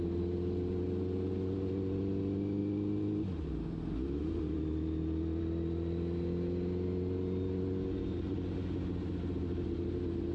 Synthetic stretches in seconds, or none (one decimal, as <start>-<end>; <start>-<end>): none